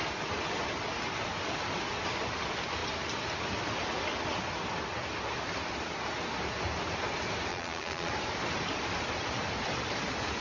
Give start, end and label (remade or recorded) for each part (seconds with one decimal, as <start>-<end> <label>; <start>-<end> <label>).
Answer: 0.0-7.5 recorded; 7.5-8.1 remade; 8.1-10.4 recorded